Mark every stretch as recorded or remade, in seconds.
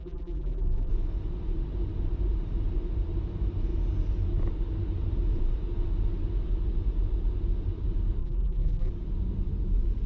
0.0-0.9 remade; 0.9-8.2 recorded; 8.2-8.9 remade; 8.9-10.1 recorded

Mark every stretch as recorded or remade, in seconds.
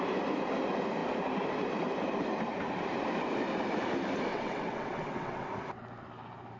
0.0-4.3 recorded; 4.3-5.5 remade; 5.5-6.6 recorded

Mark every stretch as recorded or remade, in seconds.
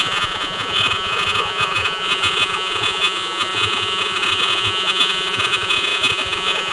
0.0-6.7 remade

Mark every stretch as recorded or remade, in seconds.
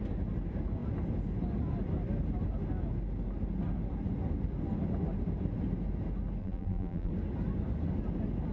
0.0-6.4 recorded; 6.4-7.1 remade; 7.1-8.5 recorded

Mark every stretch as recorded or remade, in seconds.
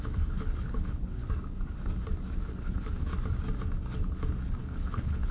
0.0-1.2 remade; 1.2-2.4 recorded; 2.4-3.1 remade; 3.1-4.6 recorded; 4.6-5.3 remade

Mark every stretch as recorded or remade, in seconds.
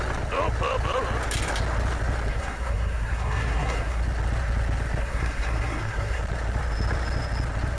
0.0-2.3 recorded; 2.3-4.0 remade; 4.0-5.0 recorded; 5.0-6.2 remade; 6.2-7.8 recorded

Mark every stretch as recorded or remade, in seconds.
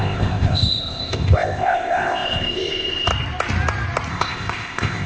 0.0-3.1 remade; 3.1-4.1 recorded; 4.1-5.1 remade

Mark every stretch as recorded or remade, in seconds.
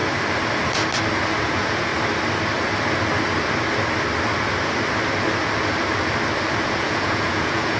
0.0-1.4 recorded; 1.4-1.9 remade; 1.9-6.6 recorded; 6.6-7.8 remade